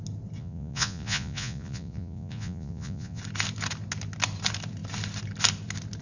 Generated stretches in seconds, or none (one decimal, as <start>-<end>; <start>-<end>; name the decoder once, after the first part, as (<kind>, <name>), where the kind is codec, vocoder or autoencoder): 0.4-3.2 (vocoder, Vocos)